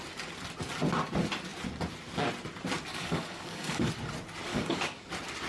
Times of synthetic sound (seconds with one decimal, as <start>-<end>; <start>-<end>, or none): 2.9-3.9; 4.5-5.1